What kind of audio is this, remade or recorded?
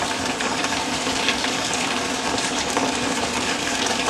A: remade